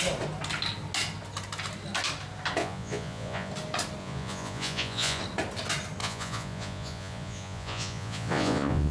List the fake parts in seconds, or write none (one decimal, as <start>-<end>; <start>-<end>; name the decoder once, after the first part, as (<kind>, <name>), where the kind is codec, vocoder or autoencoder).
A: 2.6-3.5 (vocoder, Vocos); 4.0-5.2; 6.0-8.9